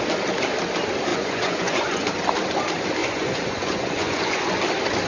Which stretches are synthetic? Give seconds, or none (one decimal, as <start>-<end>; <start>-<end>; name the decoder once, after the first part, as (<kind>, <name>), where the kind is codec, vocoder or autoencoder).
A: 1.1-2.1 (vocoder, Vocos); 3.0-4.6